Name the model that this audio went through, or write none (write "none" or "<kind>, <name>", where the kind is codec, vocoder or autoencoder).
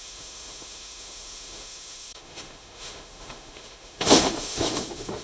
autoencoder, DAC-VAE